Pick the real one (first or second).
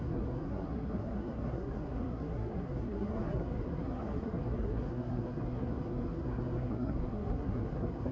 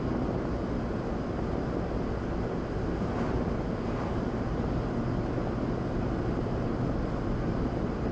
second